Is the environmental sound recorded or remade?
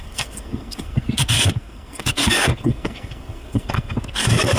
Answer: remade